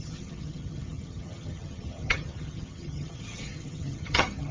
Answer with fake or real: fake